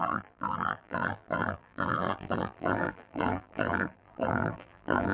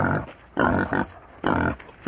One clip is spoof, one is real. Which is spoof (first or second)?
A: first